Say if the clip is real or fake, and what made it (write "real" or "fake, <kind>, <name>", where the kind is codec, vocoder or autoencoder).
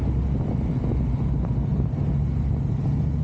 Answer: real